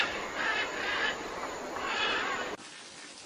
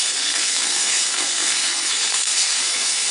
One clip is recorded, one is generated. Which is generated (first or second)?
second